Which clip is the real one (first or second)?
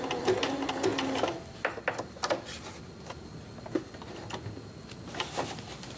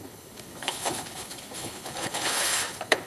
first